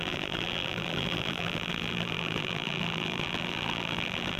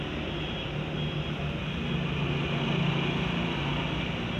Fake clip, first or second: first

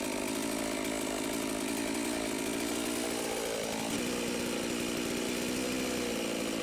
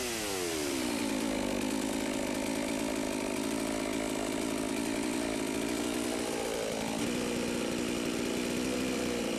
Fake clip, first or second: second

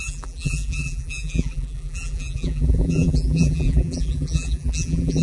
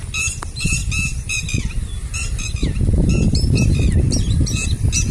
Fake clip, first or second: first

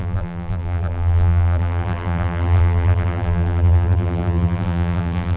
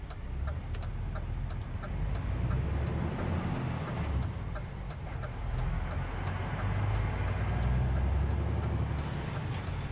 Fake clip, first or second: first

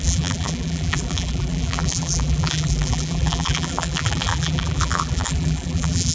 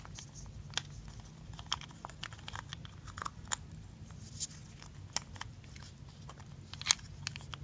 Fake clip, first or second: first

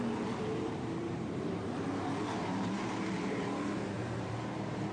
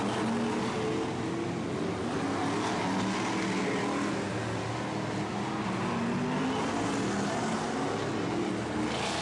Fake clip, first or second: first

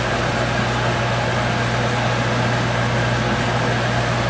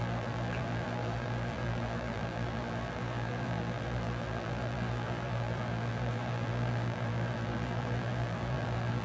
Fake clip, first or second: second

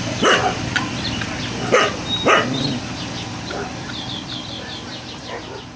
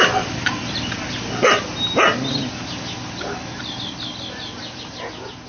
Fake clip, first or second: first